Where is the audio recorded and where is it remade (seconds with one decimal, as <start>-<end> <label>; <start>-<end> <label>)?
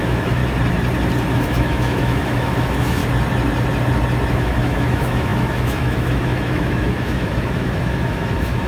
0.0-0.4 remade; 0.4-1.3 recorded; 1.3-3.0 remade; 3.0-4.3 recorded; 4.3-8.7 remade